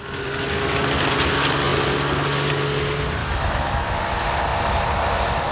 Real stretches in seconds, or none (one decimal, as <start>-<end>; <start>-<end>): 0.0-3.2; 4.0-5.5